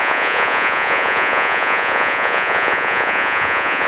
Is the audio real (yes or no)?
no